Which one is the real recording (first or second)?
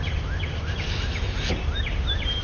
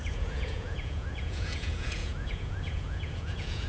first